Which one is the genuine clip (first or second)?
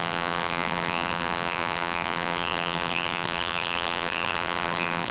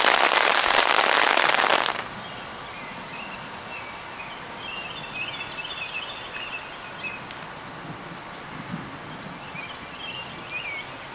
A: second